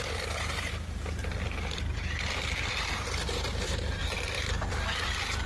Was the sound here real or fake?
fake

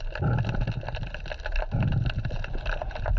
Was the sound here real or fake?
real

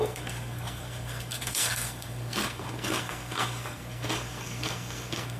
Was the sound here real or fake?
fake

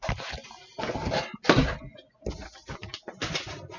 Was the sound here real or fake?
real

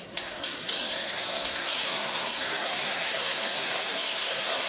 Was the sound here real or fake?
fake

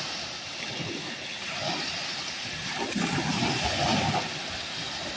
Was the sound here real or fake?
real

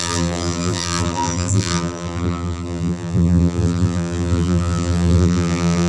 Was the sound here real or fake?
fake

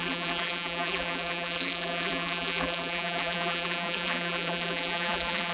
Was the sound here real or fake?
fake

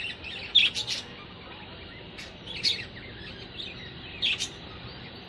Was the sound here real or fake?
real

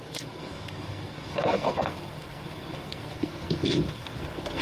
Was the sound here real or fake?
fake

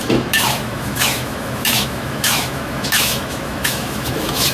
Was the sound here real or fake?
fake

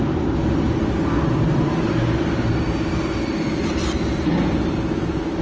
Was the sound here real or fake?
real